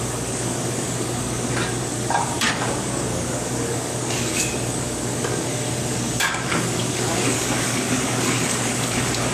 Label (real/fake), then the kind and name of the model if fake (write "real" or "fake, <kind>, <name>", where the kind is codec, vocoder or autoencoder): fake, codec, DAC